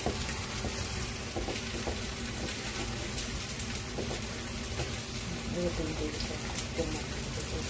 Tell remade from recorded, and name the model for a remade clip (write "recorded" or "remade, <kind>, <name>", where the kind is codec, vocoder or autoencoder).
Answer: recorded